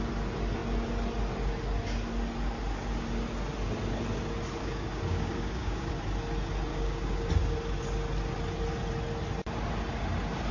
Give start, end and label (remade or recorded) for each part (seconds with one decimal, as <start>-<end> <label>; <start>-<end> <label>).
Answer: 0.0-4.6 recorded; 4.6-5.9 remade; 5.9-6.7 recorded; 6.7-7.3 remade; 7.3-10.5 recorded